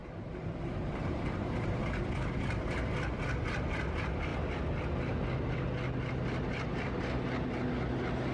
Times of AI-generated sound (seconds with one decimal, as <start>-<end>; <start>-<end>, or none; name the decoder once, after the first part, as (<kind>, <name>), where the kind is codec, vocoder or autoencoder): 0.0-2.8 (vocoder, BigVGAN v2)